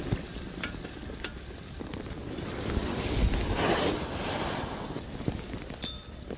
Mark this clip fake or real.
fake